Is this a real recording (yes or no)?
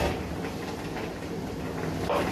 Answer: yes